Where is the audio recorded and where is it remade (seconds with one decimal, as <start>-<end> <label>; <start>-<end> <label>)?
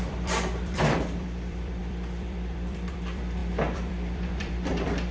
0.0-5.1 remade